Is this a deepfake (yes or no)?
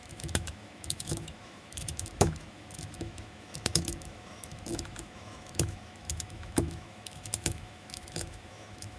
yes